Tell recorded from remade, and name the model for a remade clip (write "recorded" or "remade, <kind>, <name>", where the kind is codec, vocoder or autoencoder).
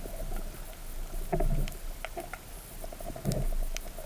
recorded